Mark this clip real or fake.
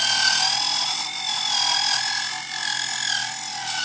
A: real